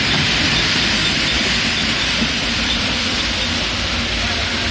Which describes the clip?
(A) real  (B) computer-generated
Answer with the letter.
B